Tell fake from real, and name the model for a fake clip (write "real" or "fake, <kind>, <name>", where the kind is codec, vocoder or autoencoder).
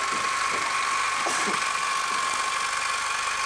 real